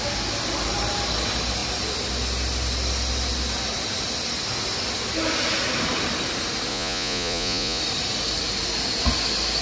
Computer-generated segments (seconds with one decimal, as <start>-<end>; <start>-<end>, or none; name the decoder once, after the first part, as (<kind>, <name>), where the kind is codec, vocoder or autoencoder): 6.7-7.8 (vocoder, Vocos)